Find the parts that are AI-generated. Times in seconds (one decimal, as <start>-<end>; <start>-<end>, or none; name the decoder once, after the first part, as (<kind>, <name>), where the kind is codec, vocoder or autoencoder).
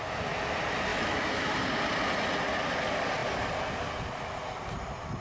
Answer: 0.9-1.5 (autoencoder, DAC-VAE)